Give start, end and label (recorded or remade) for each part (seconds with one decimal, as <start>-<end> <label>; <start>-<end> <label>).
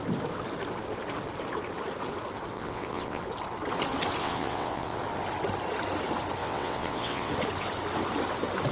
0.0-2.5 recorded; 2.5-3.2 remade; 3.2-4.2 recorded; 4.2-5.0 remade; 5.0-6.4 recorded; 6.4-7.3 remade; 7.3-8.7 recorded